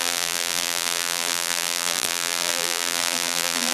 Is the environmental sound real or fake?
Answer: fake